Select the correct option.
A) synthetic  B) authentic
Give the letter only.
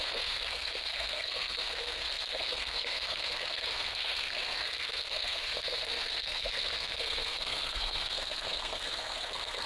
A